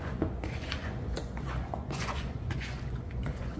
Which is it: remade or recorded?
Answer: remade